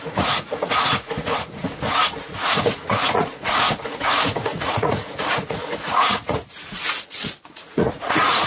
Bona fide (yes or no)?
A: no